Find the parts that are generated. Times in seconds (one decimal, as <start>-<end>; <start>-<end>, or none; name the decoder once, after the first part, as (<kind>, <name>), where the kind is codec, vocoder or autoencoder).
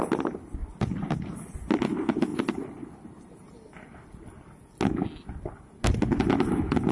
0.6-1.2 (vocoder, BigVGAN v2)